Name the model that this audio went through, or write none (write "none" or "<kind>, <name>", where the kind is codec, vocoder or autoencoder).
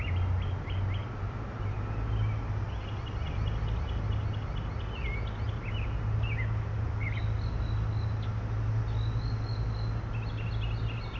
none